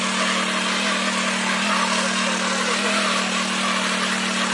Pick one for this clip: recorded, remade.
recorded